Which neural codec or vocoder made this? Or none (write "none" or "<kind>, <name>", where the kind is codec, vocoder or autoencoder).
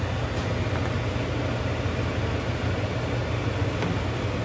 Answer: none